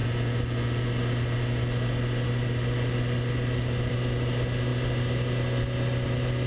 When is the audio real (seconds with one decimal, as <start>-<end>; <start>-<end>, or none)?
0.0-6.5